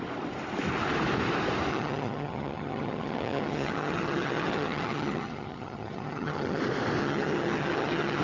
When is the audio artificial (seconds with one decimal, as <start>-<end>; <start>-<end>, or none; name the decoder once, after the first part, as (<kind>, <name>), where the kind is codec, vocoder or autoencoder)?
1.7-6.6 (vocoder, HiFi-GAN); 7.0-8.2